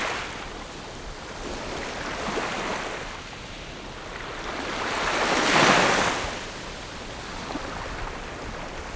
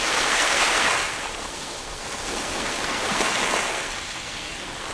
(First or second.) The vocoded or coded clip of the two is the second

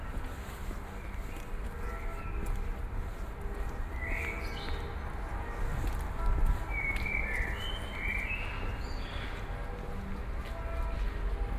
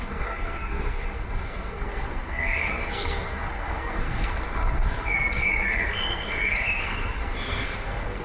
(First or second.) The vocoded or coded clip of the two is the second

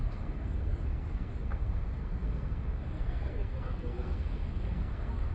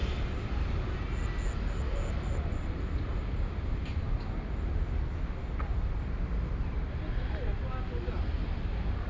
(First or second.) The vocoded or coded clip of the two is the first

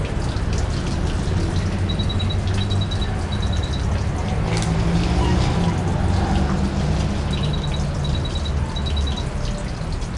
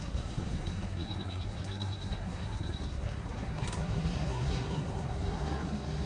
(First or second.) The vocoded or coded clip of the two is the second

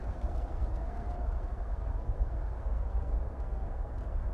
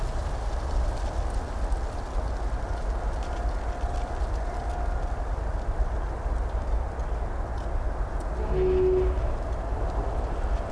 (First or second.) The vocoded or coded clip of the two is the first